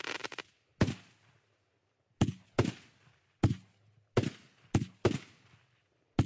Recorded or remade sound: recorded